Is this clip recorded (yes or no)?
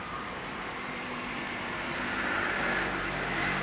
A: no